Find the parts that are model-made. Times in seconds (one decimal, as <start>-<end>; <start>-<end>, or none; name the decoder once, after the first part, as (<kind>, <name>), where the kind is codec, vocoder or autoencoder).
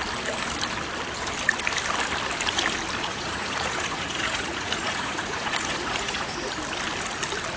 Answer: 3.0-6.5 (vocoder, Vocos)